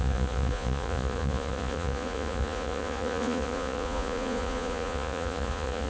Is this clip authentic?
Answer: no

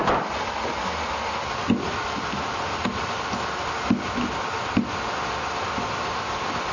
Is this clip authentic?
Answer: yes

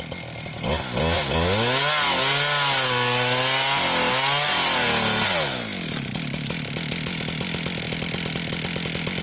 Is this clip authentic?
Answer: yes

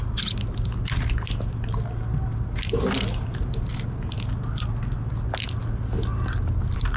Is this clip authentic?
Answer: yes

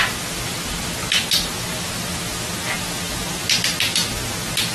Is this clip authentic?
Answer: yes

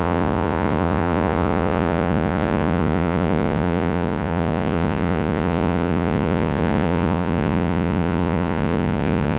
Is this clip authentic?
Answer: no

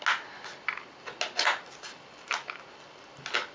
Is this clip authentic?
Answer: yes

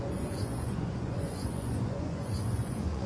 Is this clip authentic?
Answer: no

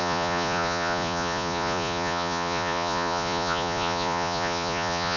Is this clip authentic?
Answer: no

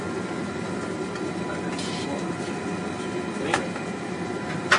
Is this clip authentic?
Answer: yes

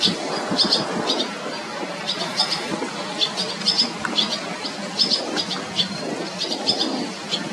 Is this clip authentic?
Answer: yes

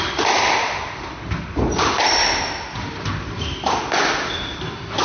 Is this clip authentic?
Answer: yes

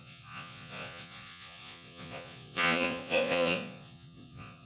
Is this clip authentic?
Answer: no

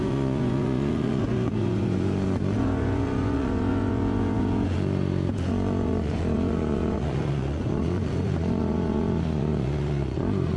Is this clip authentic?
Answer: no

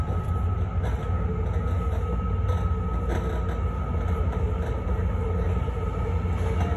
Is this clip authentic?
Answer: yes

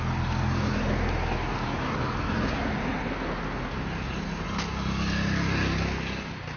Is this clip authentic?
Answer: yes